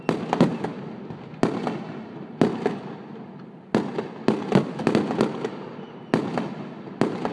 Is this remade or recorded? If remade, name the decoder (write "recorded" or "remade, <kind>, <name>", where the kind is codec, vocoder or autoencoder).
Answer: recorded